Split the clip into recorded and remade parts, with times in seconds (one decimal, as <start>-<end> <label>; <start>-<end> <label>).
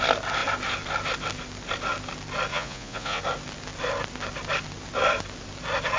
0.0-2.5 recorded; 2.5-3.2 remade; 3.2-6.0 recorded